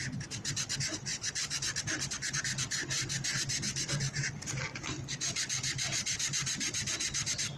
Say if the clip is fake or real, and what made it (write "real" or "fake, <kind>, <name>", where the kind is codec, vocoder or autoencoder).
real